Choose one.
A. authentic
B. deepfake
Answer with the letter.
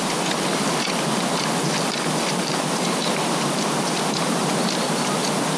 A